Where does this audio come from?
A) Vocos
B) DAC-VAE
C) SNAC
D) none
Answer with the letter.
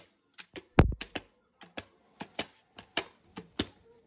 D